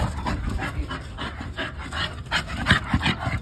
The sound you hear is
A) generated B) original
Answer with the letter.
B